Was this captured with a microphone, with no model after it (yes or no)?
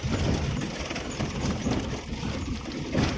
yes